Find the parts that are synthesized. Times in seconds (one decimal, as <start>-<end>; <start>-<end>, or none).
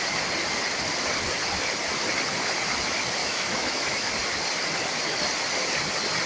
3.2-4.1